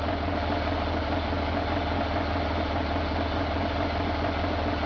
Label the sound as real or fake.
real